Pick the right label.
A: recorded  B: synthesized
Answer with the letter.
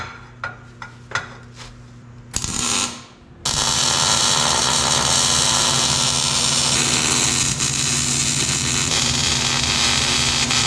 A